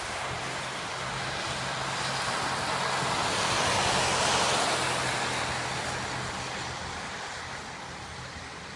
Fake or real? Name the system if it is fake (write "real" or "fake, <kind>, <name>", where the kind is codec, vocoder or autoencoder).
real